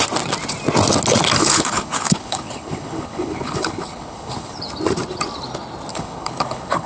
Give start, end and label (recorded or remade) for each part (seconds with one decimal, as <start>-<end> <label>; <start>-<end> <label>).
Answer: 0.0-1.4 recorded; 1.4-4.6 remade; 4.6-5.9 recorded; 5.9-6.9 remade